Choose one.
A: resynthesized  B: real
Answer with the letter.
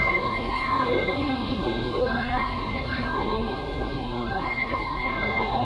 A